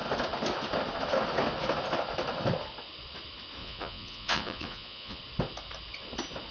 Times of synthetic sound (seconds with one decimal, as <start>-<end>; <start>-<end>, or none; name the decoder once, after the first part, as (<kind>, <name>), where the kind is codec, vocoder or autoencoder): 3.6-5.2 (vocoder, Vocos)